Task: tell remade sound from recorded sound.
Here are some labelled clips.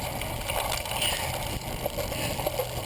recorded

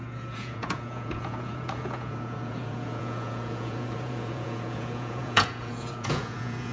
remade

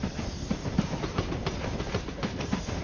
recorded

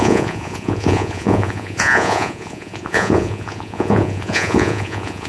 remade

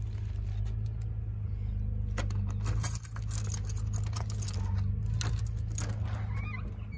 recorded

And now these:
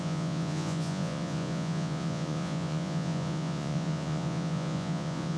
remade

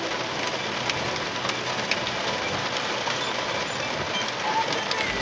recorded